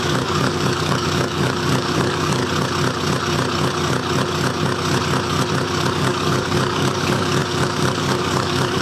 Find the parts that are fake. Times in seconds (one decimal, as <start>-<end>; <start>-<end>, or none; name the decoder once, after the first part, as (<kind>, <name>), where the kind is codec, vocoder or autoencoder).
0.0-2.4 (codec, DAC); 5.9-8.8